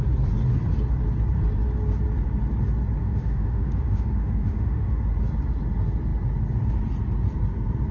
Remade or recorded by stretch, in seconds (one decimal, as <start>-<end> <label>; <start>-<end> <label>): 0.0-3.0 recorded; 3.0-5.0 remade; 5.0-7.9 recorded